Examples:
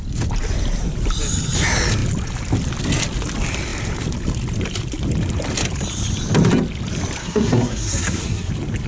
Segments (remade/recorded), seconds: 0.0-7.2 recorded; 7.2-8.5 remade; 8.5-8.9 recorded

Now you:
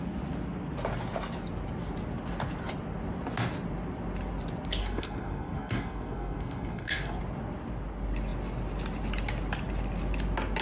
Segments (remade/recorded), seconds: 0.0-4.8 recorded; 4.8-7.2 remade; 7.2-10.6 recorded